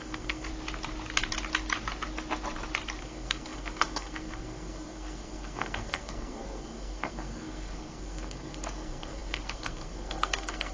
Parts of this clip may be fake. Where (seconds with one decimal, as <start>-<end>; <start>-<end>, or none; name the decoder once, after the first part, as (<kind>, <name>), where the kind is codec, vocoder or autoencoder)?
0.0-0.5 (codec, SNAC); 3.0-10.7